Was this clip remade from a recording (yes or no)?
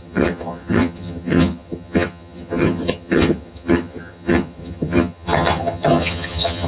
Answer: yes